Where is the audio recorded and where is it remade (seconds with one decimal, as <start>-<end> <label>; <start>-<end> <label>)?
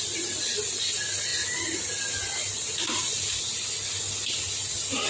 0.0-5.1 recorded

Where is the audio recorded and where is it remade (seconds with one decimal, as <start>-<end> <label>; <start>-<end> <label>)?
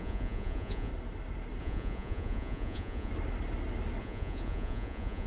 0.0-0.9 remade; 0.9-1.6 recorded; 1.6-3.1 remade; 3.1-4.0 recorded; 4.0-5.3 remade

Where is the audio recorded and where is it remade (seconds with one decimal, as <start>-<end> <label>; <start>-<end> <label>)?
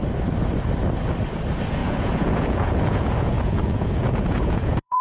0.0-1.8 recorded; 1.8-5.0 remade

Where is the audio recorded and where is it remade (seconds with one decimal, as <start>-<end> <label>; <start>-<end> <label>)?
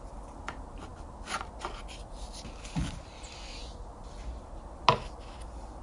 0.0-5.8 recorded